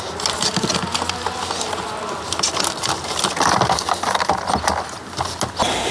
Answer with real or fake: real